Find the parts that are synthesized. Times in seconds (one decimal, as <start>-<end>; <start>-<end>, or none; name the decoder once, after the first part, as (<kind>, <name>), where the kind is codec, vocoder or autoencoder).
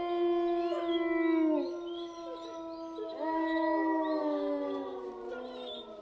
4.2-5.0 (codec, DAC)